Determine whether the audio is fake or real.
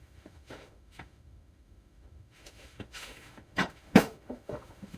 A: fake